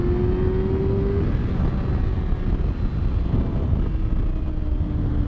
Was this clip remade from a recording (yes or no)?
no